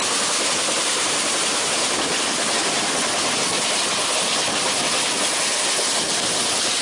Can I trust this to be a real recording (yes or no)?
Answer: yes